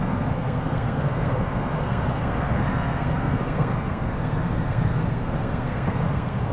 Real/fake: fake